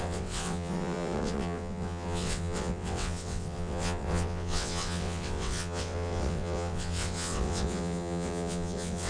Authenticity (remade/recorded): remade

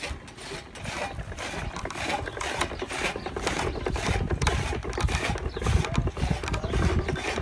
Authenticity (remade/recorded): recorded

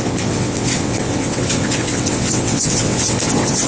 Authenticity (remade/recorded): remade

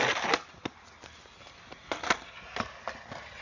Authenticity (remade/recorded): recorded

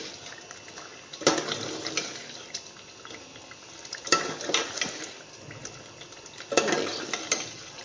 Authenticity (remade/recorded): recorded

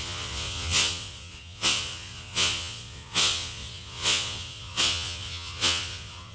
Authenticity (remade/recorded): remade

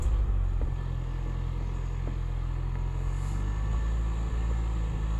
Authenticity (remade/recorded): recorded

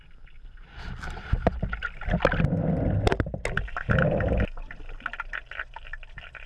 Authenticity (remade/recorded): recorded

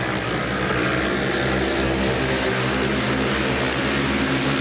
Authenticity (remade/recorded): recorded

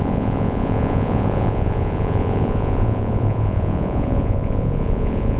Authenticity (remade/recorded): remade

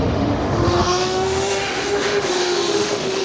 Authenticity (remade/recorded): remade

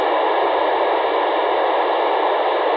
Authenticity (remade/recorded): recorded